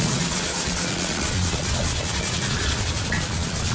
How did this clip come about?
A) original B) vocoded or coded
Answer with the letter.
B